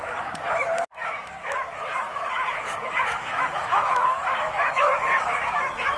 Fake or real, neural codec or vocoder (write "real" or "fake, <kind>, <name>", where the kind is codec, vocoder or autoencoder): fake, autoencoder, DAC-VAE